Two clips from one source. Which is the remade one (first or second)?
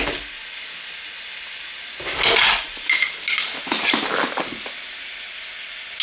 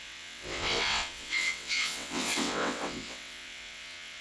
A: second